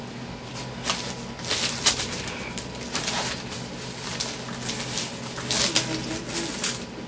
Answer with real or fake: real